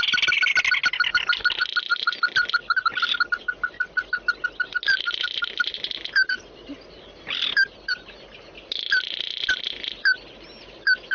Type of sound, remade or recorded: recorded